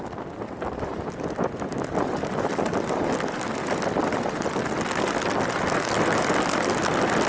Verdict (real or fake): real